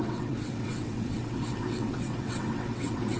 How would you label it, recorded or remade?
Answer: remade